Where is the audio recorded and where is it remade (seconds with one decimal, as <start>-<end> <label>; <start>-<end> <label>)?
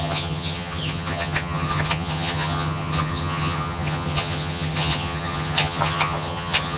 0.0-6.8 remade